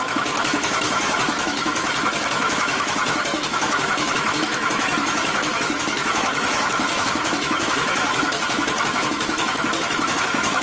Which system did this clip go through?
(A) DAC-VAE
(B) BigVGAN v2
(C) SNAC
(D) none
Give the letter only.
A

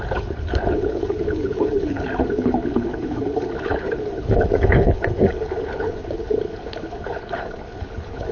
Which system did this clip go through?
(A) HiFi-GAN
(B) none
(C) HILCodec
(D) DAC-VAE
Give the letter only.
C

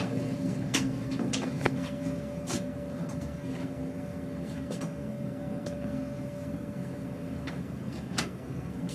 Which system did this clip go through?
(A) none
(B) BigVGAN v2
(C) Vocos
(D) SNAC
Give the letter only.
D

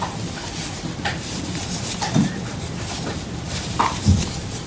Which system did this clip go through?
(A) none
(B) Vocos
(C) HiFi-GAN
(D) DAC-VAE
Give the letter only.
A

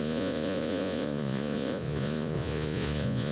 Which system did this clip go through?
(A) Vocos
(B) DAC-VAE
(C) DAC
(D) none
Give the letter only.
A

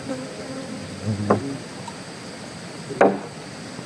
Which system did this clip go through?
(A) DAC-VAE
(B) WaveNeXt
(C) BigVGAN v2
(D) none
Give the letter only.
D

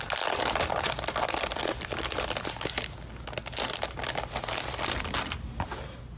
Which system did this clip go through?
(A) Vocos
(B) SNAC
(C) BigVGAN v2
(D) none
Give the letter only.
D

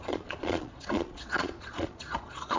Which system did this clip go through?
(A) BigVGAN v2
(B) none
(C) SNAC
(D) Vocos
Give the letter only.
D